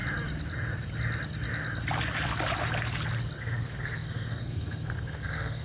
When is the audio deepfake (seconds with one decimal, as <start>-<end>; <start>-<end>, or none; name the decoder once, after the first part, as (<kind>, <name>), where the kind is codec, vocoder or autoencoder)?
3.4-5.6 (codec, SNAC)